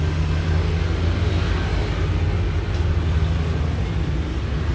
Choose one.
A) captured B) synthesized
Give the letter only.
A